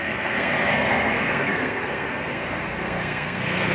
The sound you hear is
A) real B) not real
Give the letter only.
B